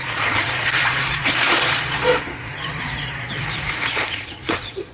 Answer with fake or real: fake